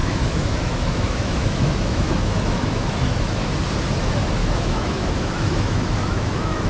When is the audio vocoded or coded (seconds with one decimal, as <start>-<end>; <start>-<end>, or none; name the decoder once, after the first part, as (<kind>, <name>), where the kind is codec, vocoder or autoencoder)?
0.0-3.5 (autoencoder, DAC-VAE); 4.4-6.7